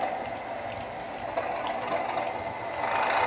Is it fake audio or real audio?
real